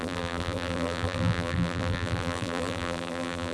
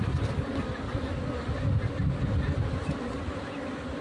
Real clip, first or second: second